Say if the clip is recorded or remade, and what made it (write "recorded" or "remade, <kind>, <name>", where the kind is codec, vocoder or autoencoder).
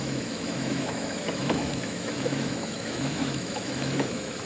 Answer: remade, autoencoder, DAC-VAE